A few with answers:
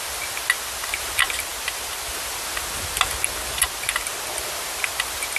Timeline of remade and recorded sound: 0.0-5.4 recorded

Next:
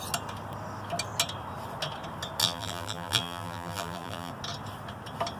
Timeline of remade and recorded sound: 0.0-2.4 recorded; 2.4-4.3 remade; 4.3-5.4 recorded